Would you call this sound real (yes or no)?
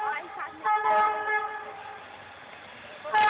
yes